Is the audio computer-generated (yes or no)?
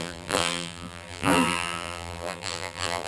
yes